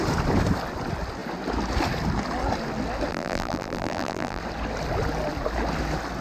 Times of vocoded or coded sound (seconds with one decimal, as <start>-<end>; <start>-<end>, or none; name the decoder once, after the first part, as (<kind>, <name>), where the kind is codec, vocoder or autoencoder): 3.1-4.4 (vocoder, BigVGAN v2)